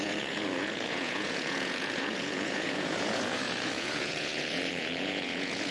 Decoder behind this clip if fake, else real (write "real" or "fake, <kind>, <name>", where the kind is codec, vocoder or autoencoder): fake, vocoder, Vocos